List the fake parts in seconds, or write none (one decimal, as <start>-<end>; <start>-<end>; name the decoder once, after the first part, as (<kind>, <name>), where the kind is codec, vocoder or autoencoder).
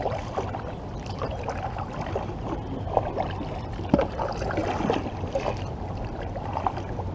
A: none